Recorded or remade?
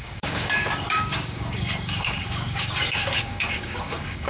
remade